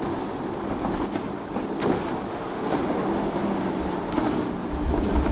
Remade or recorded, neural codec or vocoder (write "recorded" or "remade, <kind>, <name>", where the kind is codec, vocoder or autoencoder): recorded